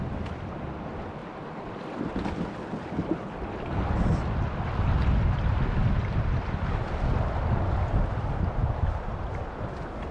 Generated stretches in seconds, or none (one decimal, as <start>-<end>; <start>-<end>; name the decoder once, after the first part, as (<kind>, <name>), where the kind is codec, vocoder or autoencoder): none